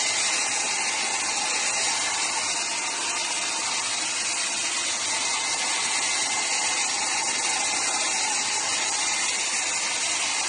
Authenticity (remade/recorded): recorded